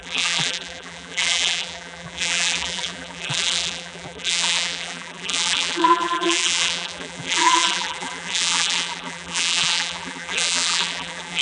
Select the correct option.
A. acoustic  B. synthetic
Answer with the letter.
B